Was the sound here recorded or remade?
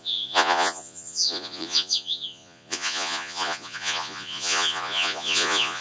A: remade